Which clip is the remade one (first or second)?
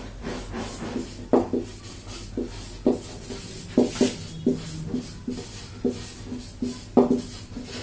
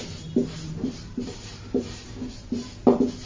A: second